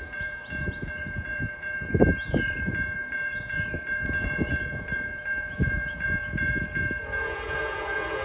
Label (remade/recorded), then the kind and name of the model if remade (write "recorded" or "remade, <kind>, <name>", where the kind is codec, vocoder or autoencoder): remade, vocoder, Vocos